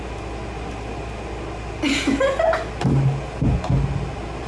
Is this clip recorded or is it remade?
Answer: recorded